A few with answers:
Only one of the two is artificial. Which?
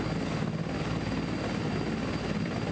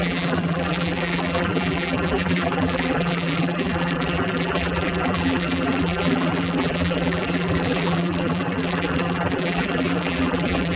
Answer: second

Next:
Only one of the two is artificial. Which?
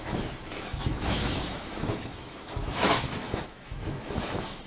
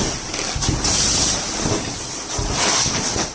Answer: first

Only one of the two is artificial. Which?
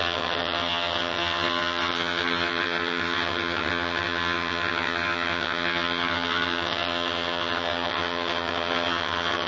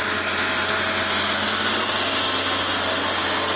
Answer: first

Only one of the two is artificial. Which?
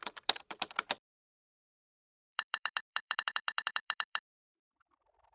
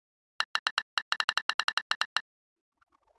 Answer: first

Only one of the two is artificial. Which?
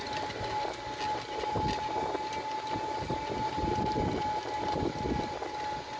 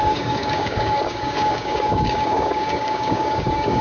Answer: second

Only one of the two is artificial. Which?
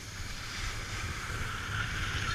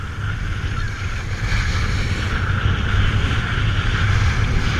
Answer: first